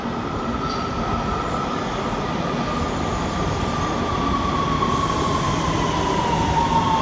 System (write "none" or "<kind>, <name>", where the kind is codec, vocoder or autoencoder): none